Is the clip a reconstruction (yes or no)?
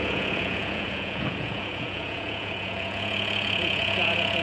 yes